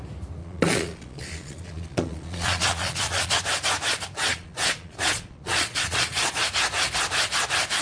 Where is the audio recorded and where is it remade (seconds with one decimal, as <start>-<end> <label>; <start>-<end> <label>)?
0.0-0.4 recorded; 0.4-3.4 remade; 3.4-4.3 recorded; 4.3-6.4 remade; 6.4-7.8 recorded